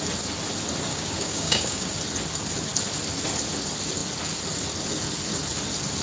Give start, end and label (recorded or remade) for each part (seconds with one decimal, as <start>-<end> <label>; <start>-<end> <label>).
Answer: 0.0-0.9 recorded; 0.9-1.9 remade; 1.9-6.0 recorded